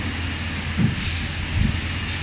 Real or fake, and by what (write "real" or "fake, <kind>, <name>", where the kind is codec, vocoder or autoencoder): real